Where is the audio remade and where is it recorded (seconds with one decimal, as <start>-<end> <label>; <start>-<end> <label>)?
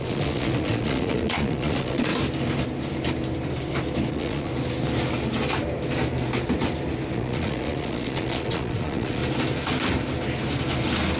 0.0-2.1 remade; 2.1-4.1 recorded; 4.1-4.5 remade; 4.5-7.1 recorded; 7.1-9.2 remade; 9.2-11.2 recorded